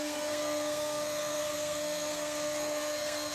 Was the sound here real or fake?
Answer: fake